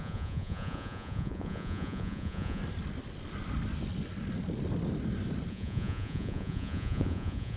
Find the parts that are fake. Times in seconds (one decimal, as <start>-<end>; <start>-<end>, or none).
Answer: 0.0-2.6; 5.5-7.6